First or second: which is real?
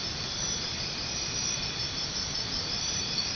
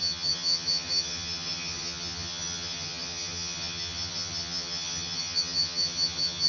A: first